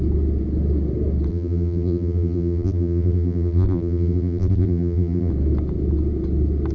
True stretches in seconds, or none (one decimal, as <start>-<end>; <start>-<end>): 0.0-1.3; 5.3-6.7